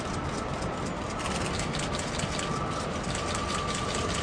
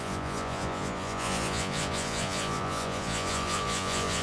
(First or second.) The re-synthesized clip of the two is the second